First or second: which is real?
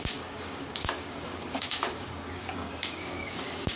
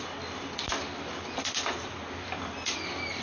second